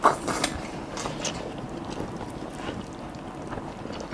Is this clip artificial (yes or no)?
no